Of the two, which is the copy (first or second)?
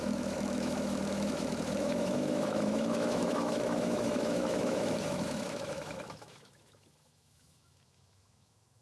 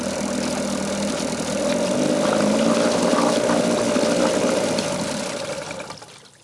first